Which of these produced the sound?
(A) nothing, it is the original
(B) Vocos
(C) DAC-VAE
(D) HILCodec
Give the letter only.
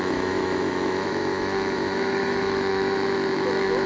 C